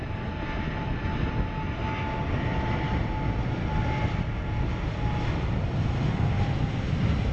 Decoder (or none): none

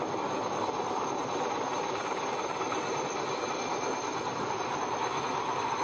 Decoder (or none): none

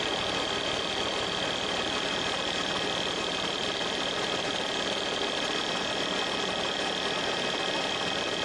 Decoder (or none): none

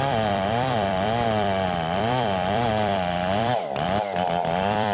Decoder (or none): vocoder, BigVGAN v2